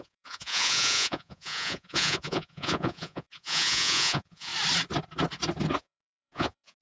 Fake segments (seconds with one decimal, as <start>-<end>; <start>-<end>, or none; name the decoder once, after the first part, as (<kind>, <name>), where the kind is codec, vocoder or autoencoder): 0.0-4.5 (vocoder, Vocos); 5.8-6.8